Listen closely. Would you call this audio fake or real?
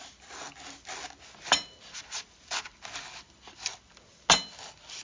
real